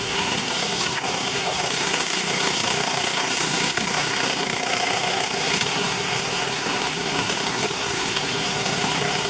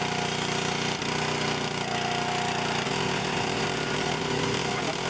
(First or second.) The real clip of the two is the second